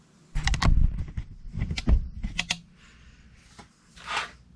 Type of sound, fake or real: real